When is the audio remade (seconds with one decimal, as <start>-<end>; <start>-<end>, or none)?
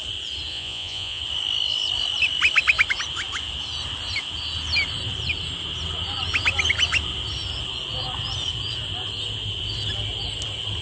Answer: 0.5-1.2